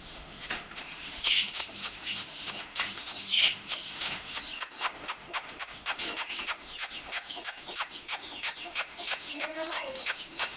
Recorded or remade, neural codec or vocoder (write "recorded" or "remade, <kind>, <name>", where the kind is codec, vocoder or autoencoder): remade, autoencoder, DAC-VAE